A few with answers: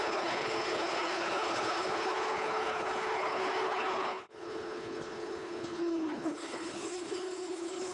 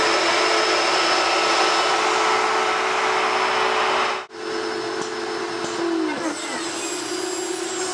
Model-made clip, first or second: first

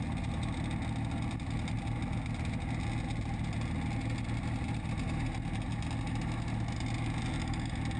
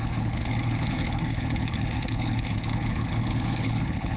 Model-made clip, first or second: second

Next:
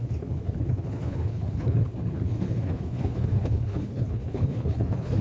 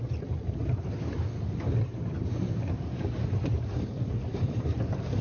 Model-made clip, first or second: first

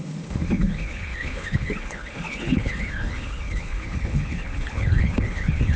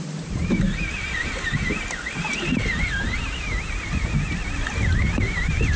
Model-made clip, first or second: first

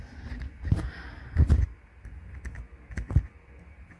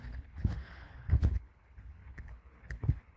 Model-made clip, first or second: second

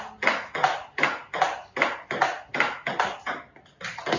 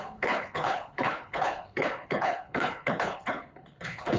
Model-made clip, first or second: second